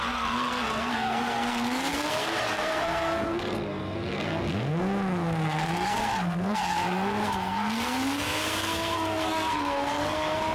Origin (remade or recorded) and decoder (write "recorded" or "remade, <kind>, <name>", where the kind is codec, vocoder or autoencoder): remade, codec, SNAC